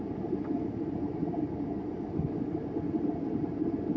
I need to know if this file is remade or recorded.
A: recorded